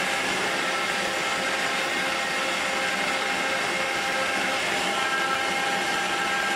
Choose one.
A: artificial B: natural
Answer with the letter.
B